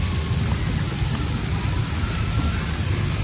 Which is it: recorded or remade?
recorded